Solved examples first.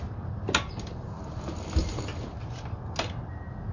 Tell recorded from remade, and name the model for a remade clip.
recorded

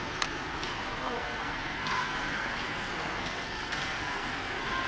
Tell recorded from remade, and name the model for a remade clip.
remade, codec, SNAC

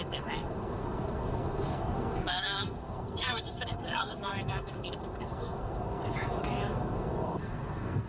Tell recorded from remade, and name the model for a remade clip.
remade, codec, SNAC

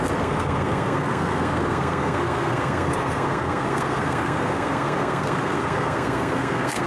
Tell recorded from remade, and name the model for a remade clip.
remade, codec, SNAC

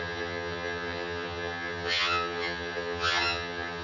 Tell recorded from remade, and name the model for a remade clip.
remade, vocoder, HiFi-GAN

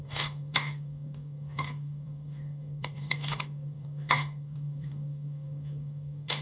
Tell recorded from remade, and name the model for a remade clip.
remade, codec, DAC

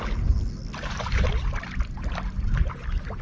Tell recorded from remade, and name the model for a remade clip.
recorded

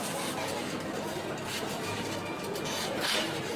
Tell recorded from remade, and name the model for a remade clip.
recorded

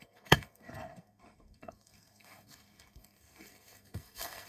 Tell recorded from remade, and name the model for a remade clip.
remade, codec, SNAC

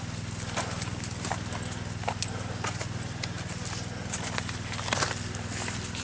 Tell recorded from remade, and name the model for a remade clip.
recorded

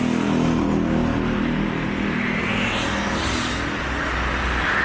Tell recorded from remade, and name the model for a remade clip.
recorded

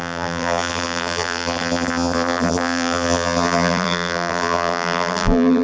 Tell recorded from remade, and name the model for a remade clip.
remade, vocoder, BigVGAN v2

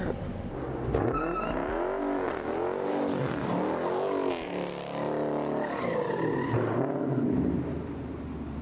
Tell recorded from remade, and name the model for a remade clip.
recorded